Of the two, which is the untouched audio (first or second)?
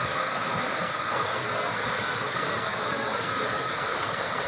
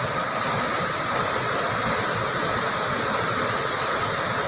second